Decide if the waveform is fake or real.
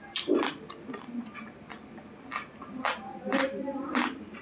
real